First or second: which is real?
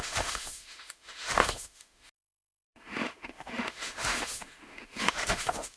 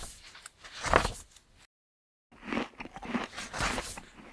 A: second